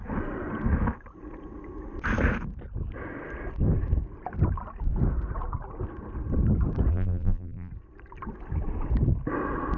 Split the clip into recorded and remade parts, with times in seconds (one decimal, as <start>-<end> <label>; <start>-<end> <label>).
0.0-6.9 recorded; 6.9-7.7 remade; 7.7-9.8 recorded